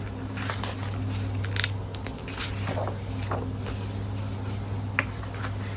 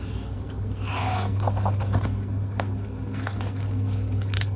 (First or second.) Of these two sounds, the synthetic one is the second